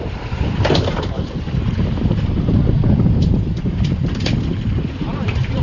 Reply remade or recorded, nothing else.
remade